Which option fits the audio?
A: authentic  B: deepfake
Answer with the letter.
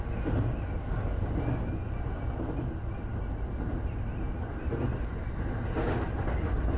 A